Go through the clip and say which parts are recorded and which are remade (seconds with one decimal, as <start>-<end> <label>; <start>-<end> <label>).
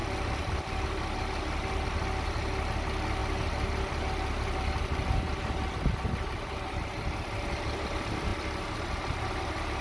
0.0-9.8 recorded